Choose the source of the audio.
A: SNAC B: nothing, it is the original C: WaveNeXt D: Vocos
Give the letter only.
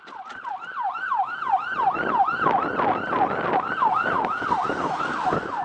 B